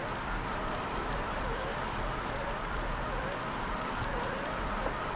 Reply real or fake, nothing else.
fake